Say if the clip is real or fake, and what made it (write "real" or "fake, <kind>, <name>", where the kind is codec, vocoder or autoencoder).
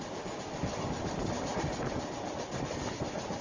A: real